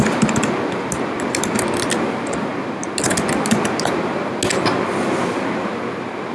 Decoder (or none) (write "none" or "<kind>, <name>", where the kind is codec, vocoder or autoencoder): none